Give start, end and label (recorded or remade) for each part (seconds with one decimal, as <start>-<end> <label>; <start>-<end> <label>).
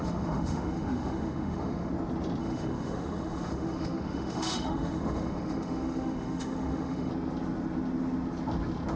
0.0-1.9 remade; 1.9-2.4 recorded; 2.4-7.1 remade; 7.1-9.0 recorded